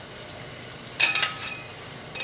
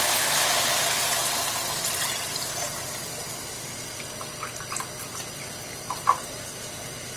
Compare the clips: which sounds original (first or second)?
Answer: second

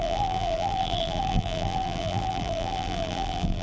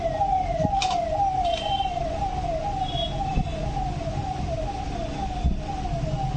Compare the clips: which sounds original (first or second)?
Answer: second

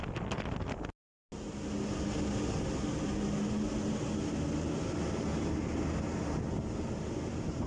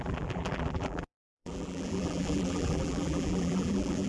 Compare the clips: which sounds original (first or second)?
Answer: first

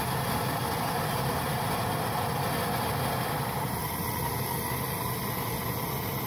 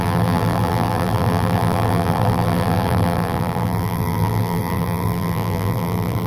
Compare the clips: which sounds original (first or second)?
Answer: first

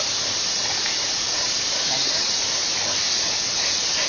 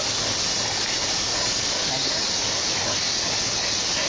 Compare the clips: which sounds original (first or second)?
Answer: second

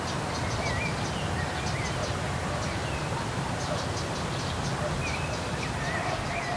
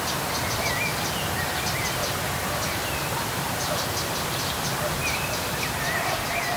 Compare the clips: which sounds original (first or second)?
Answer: first